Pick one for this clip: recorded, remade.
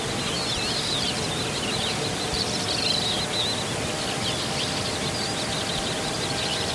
recorded